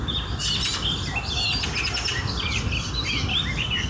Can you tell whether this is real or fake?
real